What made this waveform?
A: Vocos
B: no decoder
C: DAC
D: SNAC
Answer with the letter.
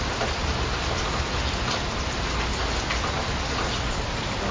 B